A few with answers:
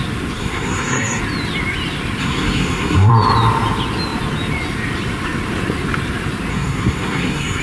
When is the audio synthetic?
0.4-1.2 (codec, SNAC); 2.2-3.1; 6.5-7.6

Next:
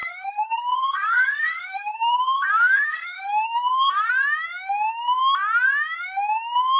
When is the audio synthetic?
0.0-4.1 (codec, SNAC)

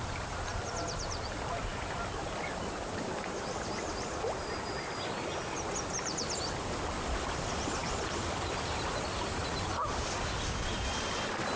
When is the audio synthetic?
none

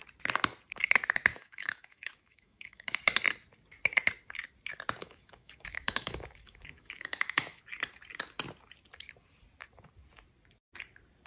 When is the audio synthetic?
1.3-3.0 (autoencoder, DAC-VAE); 5.0-7.6

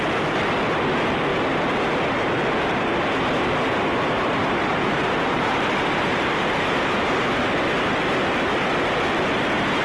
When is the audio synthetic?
4.7-7.2 (vocoder, BigVGAN v2)

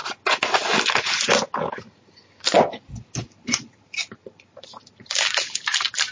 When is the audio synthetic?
3.2-6.1 (vocoder, BigVGAN v2)